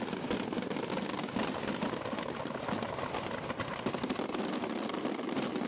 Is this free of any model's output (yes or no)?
yes